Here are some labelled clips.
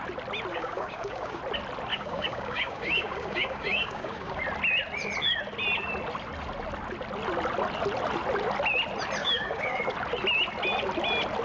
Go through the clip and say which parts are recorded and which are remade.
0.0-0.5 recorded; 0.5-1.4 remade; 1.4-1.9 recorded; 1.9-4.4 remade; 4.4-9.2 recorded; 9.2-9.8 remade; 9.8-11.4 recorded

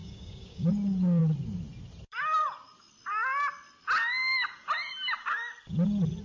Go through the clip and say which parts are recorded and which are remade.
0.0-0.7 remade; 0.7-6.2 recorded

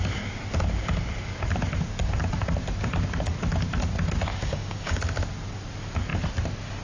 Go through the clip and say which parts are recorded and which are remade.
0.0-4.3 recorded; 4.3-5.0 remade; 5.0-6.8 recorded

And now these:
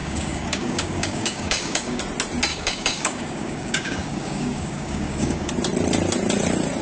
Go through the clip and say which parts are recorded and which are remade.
0.0-2.0 remade; 2.0-2.5 recorded; 2.5-5.5 remade; 5.5-6.8 recorded